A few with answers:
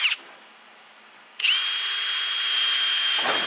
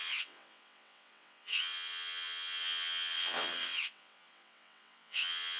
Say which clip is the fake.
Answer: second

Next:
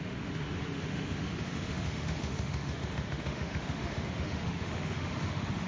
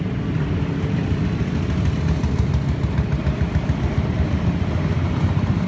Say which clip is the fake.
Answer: first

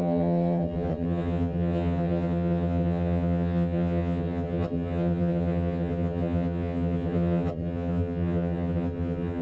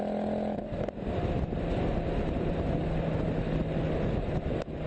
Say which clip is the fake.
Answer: first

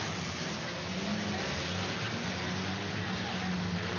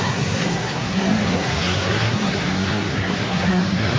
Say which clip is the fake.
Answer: second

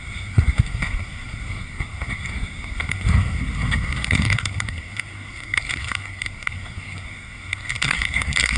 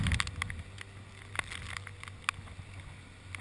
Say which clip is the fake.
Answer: first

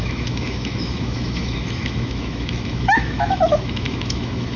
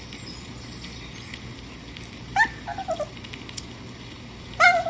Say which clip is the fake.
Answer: first